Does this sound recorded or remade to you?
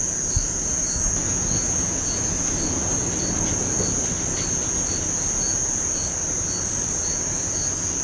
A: recorded